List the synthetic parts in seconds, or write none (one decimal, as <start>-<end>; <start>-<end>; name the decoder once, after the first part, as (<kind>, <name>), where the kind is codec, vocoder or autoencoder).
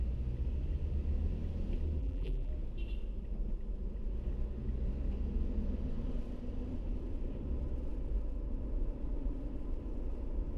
2.0-2.5 (vocoder, BigVGAN v2)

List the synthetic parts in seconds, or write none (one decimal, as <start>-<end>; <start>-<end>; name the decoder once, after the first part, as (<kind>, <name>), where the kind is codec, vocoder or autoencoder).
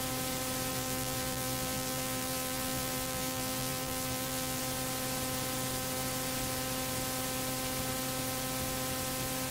0.7-4.6 (vocoder, BigVGAN v2)